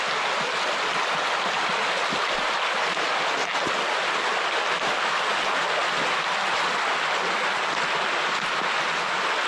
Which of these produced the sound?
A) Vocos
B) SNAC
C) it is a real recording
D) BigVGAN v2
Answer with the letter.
C